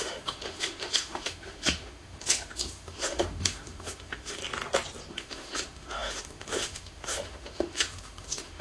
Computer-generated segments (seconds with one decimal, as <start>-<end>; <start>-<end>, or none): 0.0-4.4; 5.1-8.6